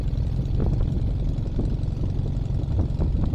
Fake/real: real